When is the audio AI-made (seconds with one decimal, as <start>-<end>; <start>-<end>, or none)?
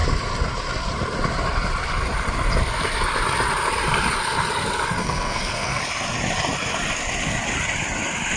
5.0-5.8